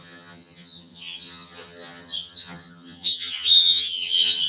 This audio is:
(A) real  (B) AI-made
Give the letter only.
B